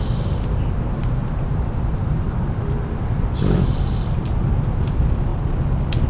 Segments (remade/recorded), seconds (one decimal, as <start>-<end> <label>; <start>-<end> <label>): 0.0-1.2 recorded; 1.2-4.6 remade; 4.6-5.3 recorded; 5.3-6.1 remade